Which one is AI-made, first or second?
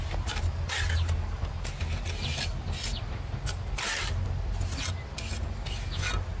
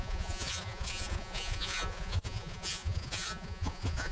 second